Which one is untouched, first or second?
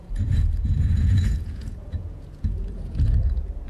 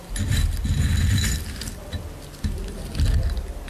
second